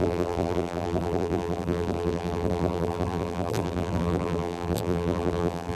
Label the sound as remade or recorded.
remade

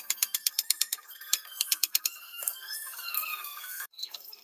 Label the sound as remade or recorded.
remade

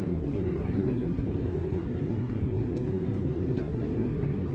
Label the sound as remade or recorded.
remade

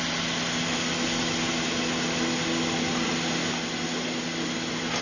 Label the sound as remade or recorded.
recorded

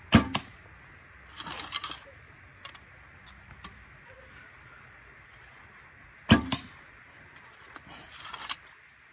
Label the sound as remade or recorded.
recorded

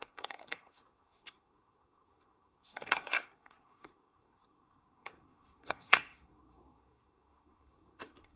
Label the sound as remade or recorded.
remade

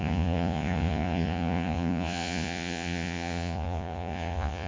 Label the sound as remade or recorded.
remade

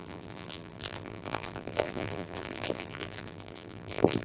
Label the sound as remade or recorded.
remade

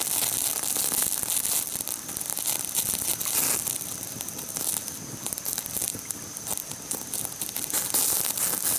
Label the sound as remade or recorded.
recorded